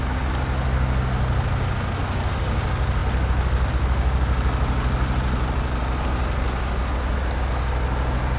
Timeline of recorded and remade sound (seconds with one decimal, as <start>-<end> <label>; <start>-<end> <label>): 0.0-8.4 recorded